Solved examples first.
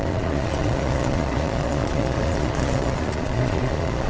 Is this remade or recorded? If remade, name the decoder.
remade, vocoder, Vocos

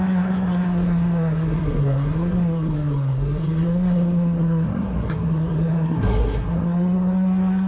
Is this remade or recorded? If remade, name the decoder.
remade, codec, SNAC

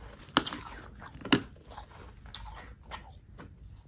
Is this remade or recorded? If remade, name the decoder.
recorded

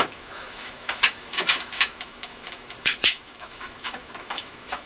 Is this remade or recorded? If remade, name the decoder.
remade, autoencoder, DAC-VAE